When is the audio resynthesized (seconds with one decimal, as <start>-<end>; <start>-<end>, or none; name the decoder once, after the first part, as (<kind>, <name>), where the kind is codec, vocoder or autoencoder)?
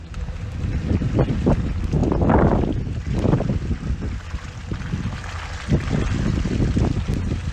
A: none